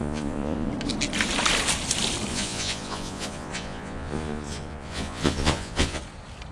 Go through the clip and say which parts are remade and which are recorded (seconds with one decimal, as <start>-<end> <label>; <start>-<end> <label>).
0.0-0.7 remade; 0.7-2.3 recorded; 2.3-6.0 remade; 6.0-6.5 recorded

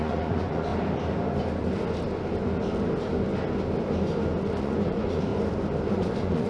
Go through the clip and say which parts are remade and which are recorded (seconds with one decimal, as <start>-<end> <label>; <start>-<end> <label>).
0.0-0.7 remade; 0.7-4.6 recorded; 4.6-5.3 remade; 5.3-5.9 recorded; 5.9-6.5 remade

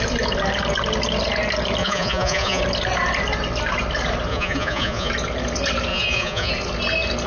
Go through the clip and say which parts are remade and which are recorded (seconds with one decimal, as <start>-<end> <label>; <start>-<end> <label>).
0.0-1.8 recorded; 1.8-2.6 remade; 2.6-4.3 recorded; 4.3-5.1 remade; 5.1-5.9 recorded; 5.9-6.5 remade; 6.5-7.3 recorded

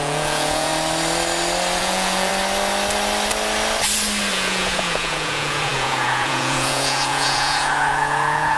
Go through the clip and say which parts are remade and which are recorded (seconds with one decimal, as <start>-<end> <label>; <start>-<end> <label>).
0.0-0.7 remade; 0.7-1.8 recorded; 1.8-2.3 remade; 2.3-4.3 recorded; 4.3-8.6 remade

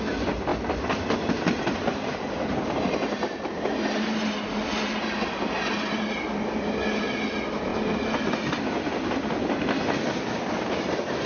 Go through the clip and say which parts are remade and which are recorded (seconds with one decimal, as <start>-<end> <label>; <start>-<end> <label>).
0.0-11.3 recorded